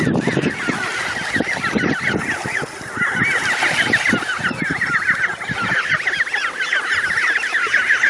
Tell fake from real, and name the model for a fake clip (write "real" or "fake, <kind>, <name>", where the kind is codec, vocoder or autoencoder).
real